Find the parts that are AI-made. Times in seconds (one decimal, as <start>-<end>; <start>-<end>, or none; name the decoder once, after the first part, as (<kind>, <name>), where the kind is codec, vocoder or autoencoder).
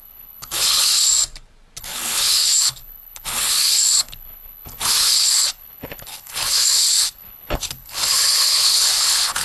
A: 0.0-1.1 (codec, HILCodec); 1.8-9.4